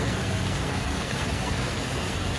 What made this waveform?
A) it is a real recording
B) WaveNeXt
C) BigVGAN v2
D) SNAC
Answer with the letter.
D